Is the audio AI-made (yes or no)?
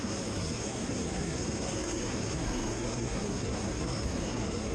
yes